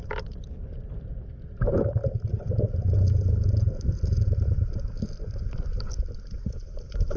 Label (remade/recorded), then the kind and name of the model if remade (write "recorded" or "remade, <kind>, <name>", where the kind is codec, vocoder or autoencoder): recorded